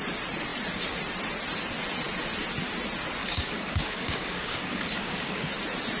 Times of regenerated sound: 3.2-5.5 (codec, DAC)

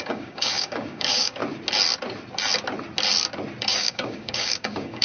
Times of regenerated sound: 0.0-1.4 (codec, DAC); 3.6-5.0

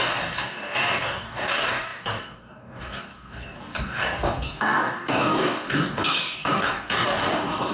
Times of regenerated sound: 0.0-7.7 (codec, DAC)

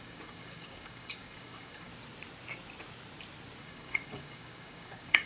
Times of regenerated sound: 0.0-1.9 (codec, DAC); 3.6-5.3

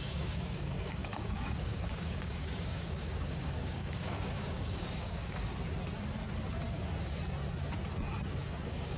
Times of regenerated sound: 0.0-5.5 (codec, DAC); 8.4-9.0